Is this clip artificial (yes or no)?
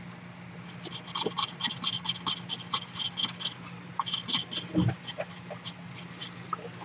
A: no